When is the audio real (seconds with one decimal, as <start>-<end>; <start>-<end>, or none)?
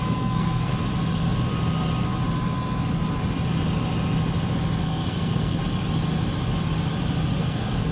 0.7-4.8; 5.6-7.4